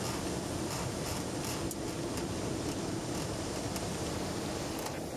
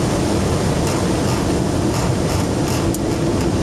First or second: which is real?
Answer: second